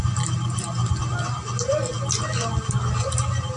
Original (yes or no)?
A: yes